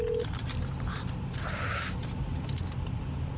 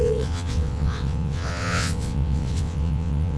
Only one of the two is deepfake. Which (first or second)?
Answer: second